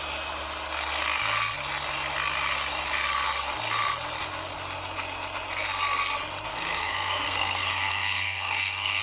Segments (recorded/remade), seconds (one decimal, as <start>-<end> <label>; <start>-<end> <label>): 0.0-6.5 recorded; 6.5-9.0 remade